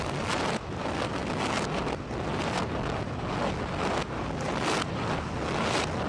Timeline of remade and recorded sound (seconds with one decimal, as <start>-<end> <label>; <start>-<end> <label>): 0.0-6.1 recorded